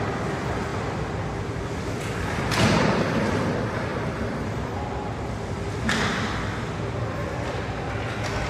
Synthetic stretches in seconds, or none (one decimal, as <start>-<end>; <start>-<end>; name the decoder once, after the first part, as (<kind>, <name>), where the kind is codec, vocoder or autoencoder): none